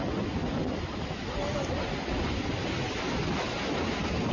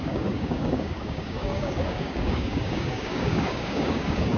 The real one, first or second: first